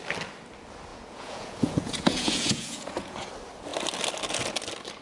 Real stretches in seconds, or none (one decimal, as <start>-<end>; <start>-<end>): 0.0-0.9; 3.3-5.0